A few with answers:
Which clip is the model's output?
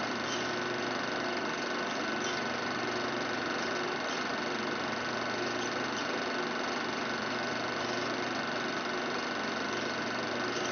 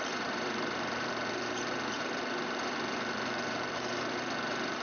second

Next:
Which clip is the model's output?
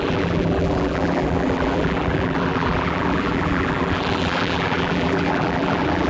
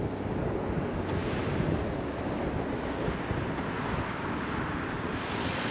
first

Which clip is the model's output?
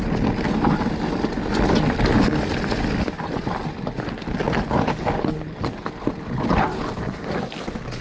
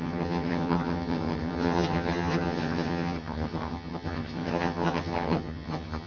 second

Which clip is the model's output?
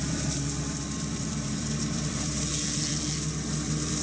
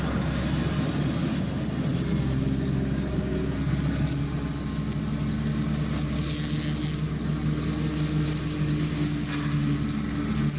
first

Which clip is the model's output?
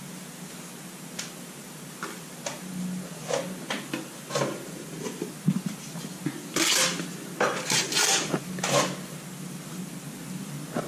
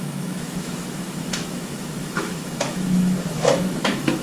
second